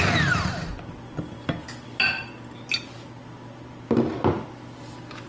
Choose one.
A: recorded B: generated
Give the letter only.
A